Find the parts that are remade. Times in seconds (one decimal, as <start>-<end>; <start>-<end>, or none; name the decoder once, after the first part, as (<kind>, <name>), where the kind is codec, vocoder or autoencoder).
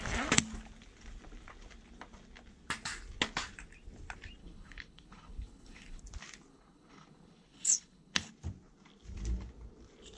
4.4-6.0 (codec, HILCodec); 6.5-8.3